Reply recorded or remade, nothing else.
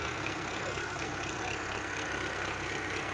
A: remade